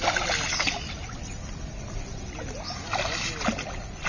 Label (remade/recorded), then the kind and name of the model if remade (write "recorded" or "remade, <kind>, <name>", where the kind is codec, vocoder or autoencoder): recorded